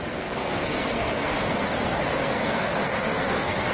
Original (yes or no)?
no